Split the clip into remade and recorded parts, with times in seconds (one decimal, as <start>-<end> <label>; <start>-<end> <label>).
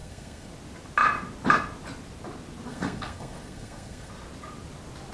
0.0-0.5 remade; 0.5-2.7 recorded; 2.7-4.1 remade; 4.1-5.1 recorded